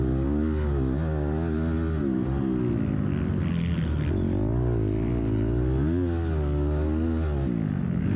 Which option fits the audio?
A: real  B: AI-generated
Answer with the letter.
A